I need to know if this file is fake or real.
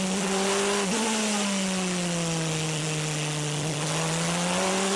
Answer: real